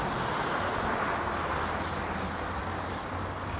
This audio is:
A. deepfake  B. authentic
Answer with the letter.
B